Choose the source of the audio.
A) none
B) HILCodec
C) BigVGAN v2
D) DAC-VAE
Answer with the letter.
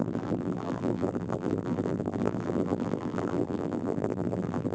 C